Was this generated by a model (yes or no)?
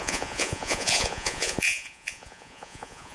yes